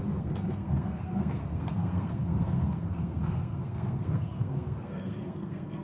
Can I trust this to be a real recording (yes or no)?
no